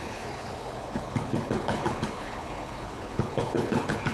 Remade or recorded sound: remade